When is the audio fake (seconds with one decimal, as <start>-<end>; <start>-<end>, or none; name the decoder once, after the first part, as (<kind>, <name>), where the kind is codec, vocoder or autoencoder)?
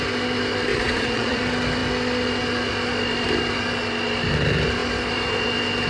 0.7-1.4 (vocoder, Vocos)